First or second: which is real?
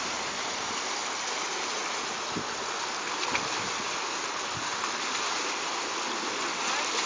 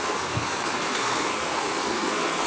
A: first